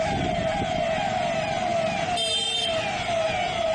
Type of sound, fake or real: real